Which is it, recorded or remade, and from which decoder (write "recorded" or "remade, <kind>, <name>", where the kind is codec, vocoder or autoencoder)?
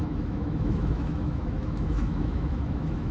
remade, autoencoder, DAC-VAE